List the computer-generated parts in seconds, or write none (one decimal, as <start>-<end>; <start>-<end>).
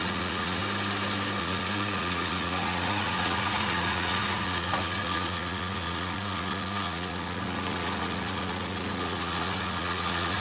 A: 0.0-0.6; 1.4-10.4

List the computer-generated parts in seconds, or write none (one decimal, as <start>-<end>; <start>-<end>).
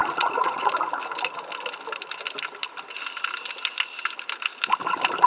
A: 0.0-0.7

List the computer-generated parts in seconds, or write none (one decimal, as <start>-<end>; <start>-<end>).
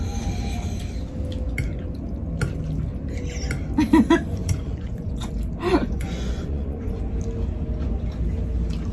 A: 4.4-5.3; 5.7-6.9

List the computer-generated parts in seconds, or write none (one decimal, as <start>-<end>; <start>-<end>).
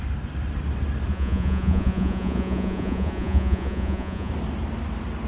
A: 1.1-4.3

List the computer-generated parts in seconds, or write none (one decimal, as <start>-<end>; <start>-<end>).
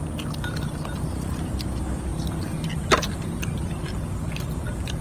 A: none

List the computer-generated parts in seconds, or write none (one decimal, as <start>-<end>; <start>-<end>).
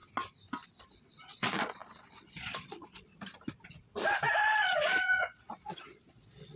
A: 0.8-3.1; 4.6-6.6